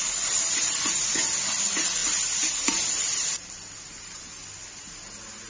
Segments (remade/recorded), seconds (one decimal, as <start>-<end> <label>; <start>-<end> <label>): 0.0-5.5 recorded